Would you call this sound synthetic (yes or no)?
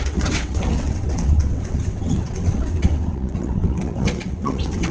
yes